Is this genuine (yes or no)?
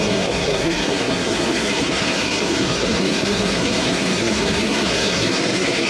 no